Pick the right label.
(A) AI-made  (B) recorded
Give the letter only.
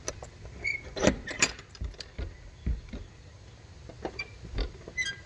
B